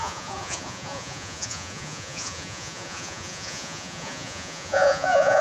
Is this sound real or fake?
fake